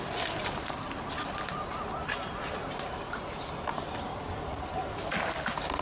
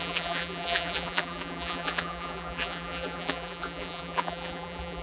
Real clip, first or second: first